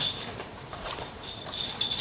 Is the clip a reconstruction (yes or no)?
yes